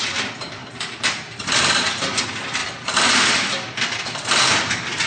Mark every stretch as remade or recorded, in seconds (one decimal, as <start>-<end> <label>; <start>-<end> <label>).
0.0-0.6 recorded; 0.6-2.2 remade; 2.2-2.6 recorded; 2.6-4.5 remade; 4.5-5.1 recorded